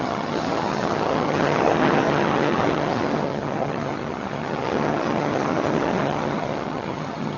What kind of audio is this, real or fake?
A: fake